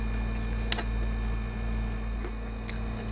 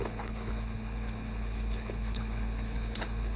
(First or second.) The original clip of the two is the first